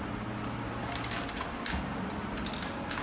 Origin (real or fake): real